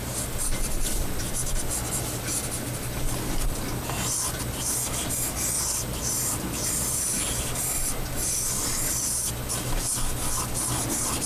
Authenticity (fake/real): real